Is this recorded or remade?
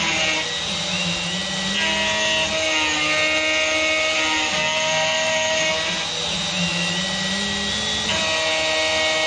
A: recorded